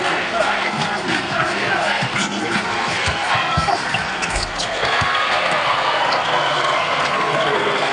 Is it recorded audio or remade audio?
remade